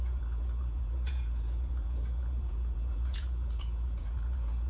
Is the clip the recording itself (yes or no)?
no